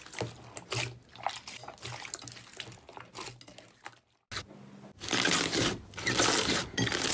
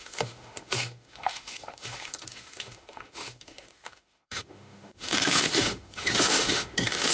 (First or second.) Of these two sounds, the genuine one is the first